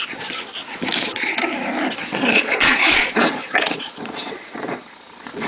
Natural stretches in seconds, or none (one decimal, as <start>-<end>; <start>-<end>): 0.0-2.0